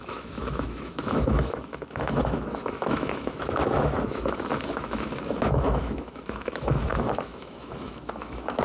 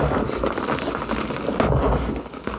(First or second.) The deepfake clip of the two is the first